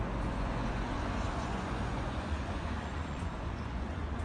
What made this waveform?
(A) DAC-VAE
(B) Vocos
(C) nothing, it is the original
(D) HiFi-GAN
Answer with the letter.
B